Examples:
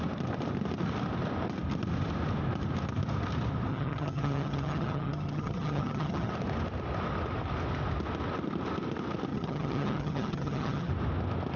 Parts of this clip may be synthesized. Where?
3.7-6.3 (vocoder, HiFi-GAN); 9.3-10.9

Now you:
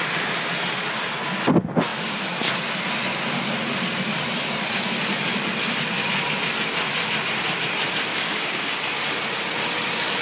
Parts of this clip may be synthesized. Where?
8.1-8.8 (codec, DAC)

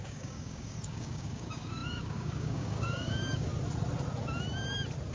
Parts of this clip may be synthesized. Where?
0.0-3.5 (codec, DAC)

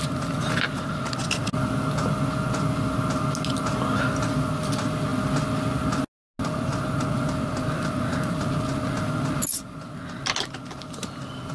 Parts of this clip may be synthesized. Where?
none